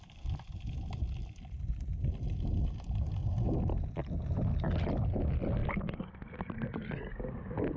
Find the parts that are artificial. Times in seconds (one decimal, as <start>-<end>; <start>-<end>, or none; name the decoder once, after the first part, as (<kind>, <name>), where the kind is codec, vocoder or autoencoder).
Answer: none